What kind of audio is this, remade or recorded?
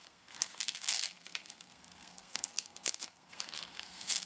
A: remade